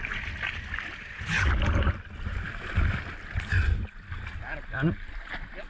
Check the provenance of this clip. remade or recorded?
recorded